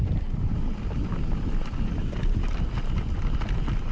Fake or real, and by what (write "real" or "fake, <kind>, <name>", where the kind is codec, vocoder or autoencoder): real